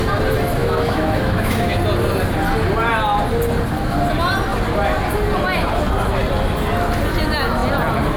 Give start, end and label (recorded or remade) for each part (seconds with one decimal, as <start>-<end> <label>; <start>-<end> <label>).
0.0-0.6 recorded; 0.6-1.8 remade; 1.8-8.2 recorded